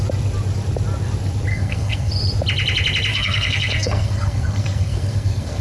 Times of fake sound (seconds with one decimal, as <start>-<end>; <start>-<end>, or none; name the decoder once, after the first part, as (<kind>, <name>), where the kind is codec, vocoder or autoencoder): 1.5-2.1 (codec, SNAC); 3.1-5.6